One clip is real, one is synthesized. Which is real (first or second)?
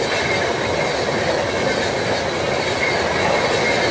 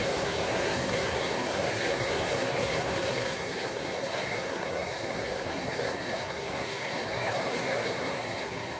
first